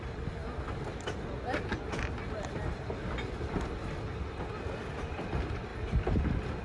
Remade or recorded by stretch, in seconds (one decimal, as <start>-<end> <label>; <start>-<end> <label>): 0.0-6.6 recorded